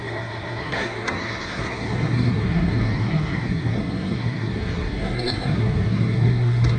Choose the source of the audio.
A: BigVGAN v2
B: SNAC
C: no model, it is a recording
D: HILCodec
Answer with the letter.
B